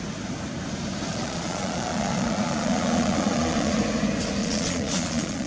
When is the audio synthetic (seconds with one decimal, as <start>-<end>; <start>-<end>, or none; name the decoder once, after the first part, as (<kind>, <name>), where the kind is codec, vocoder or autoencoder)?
1.1-3.8 (vocoder, Vocos); 4.4-5.5